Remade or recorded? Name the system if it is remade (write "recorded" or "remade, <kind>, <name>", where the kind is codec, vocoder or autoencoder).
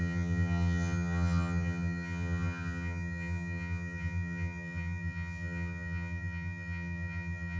remade, vocoder, HiFi-GAN